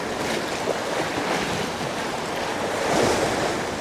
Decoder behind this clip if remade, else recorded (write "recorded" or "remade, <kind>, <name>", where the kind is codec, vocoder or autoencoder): recorded